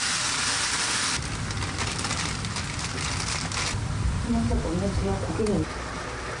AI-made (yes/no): no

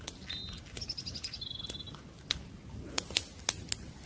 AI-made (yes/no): no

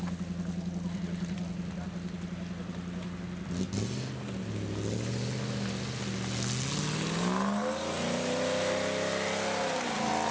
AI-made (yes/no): no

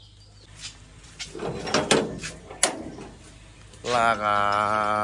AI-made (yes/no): no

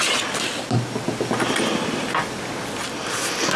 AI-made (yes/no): no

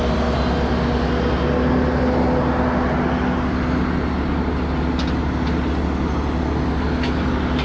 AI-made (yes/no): no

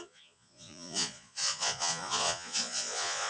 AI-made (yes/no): yes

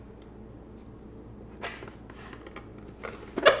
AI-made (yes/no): no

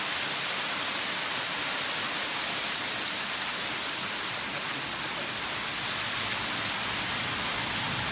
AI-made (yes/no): no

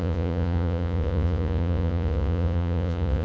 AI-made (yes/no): yes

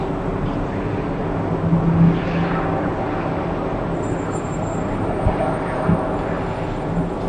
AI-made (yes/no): no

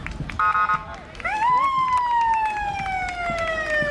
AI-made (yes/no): no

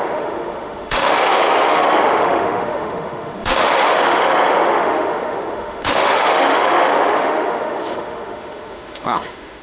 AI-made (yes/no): yes